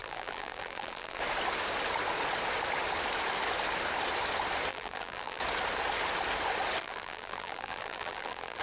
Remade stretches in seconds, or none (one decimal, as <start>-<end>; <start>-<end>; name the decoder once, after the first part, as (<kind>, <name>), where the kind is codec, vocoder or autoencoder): 0.0-1.2 (vocoder, BigVGAN v2); 4.7-5.4; 6.8-8.6